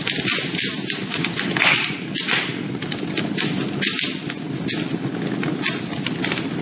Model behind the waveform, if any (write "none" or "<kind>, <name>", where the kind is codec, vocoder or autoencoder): none